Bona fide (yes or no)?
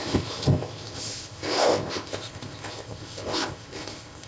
no